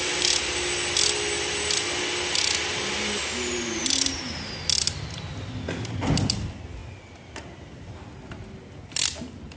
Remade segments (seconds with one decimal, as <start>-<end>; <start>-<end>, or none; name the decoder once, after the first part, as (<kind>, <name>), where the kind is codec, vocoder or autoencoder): none